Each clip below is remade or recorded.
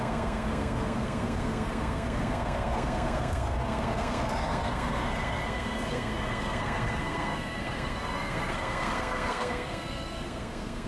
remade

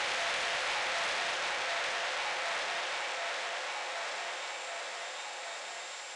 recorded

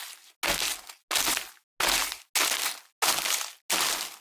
recorded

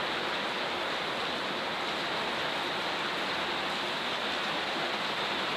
recorded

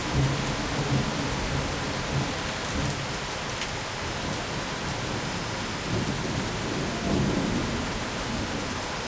recorded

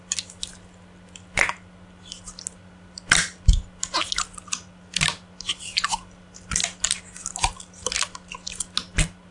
recorded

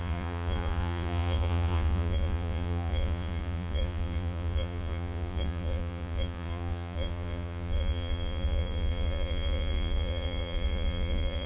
remade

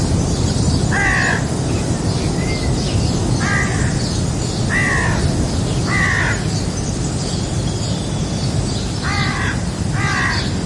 recorded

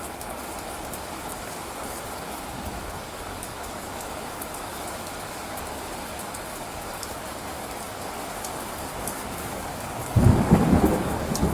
remade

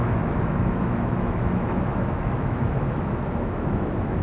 remade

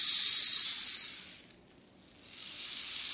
recorded